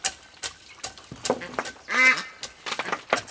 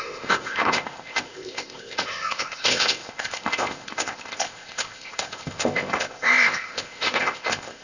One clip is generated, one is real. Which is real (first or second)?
first